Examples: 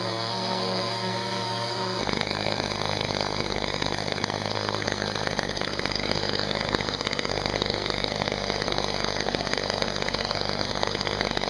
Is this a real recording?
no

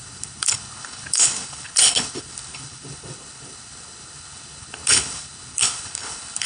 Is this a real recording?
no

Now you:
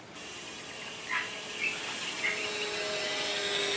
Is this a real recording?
yes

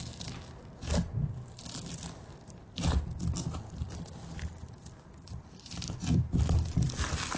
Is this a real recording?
yes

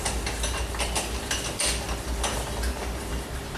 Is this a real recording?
yes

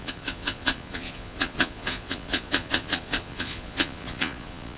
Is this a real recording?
no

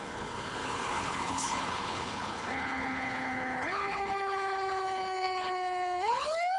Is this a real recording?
no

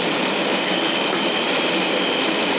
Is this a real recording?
yes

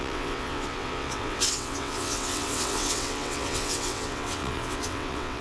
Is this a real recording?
no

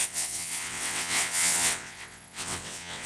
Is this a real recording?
no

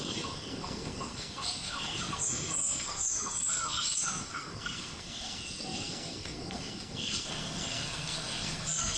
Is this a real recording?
no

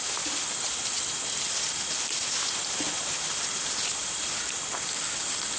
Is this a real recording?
yes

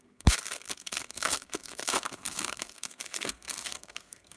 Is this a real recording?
no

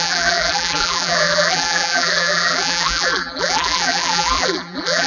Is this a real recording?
no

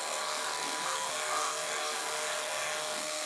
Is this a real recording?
no